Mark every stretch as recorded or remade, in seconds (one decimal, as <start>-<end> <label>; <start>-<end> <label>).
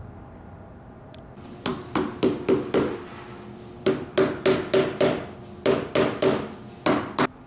0.0-7.5 recorded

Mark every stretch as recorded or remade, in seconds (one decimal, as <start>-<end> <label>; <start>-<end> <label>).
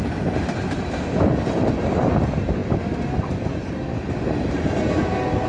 0.0-5.5 recorded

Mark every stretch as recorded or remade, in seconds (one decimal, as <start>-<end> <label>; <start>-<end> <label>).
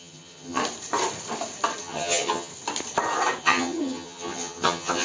0.0-0.6 remade; 0.6-1.8 recorded; 1.8-2.5 remade; 2.5-3.4 recorded; 3.4-5.0 remade